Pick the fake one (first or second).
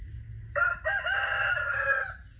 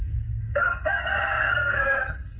second